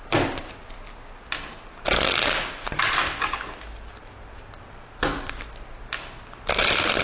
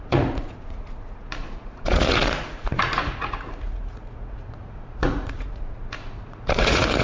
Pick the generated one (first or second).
second